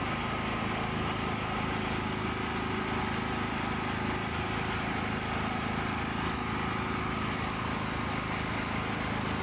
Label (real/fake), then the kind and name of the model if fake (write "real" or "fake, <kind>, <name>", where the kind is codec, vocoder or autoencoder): real